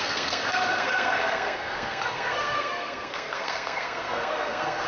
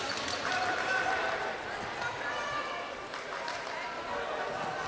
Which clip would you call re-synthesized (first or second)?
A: first